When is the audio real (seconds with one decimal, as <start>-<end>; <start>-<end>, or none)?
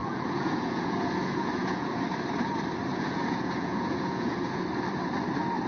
2.0-2.9; 4.6-5.7